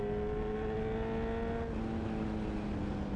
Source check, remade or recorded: recorded